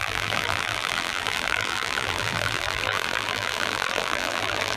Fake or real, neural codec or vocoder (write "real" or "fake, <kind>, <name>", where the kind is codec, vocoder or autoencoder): fake, vocoder, BigVGAN v2